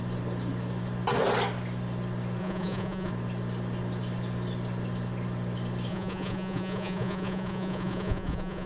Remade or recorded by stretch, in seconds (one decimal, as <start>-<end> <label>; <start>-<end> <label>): 0.0-2.4 recorded; 2.4-3.1 remade; 3.1-5.9 recorded; 5.9-8.7 remade